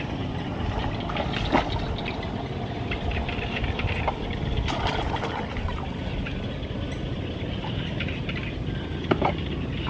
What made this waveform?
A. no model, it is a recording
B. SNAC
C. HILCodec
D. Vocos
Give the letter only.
A